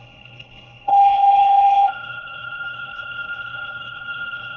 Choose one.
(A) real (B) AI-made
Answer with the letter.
B